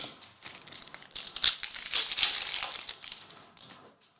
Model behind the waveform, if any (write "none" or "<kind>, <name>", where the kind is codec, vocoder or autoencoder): none